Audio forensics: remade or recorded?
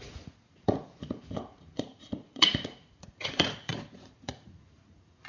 remade